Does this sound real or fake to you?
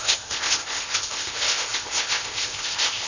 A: fake